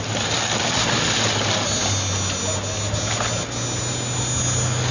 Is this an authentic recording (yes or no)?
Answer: yes